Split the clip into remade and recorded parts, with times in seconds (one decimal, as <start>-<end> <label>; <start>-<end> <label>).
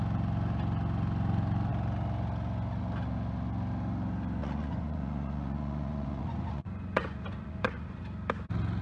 0.0-4.4 recorded; 4.4-8.0 remade; 8.0-8.8 recorded